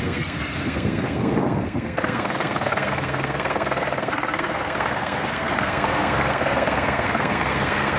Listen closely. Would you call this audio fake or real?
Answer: fake